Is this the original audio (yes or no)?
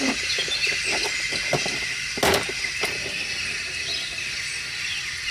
yes